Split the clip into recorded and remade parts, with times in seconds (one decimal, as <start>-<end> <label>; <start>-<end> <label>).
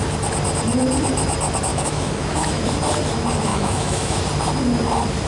0.0-1.7 recorded; 1.7-2.6 remade; 2.6-3.5 recorded; 3.5-4.2 remade; 4.2-5.3 recorded